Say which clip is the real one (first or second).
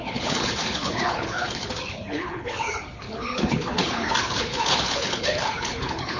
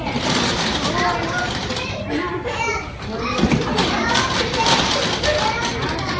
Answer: second